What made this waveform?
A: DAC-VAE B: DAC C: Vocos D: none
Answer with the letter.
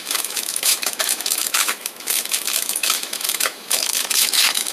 A